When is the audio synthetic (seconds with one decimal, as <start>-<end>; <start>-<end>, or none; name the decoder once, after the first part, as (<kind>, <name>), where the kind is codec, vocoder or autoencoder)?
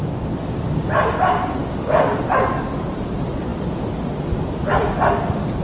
1.6-2.2 (codec, DAC)